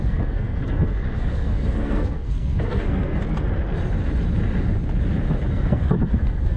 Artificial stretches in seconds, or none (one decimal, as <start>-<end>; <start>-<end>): 0.0-3.2; 5.5-6.6